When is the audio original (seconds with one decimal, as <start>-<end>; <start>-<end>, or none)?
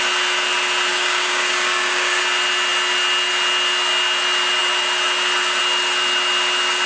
0.0-0.9; 2.2-6.9